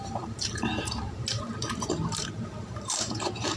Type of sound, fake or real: fake